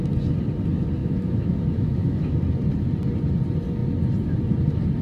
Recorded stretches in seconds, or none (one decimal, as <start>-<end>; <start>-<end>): 0.0-1.0; 2.4-5.0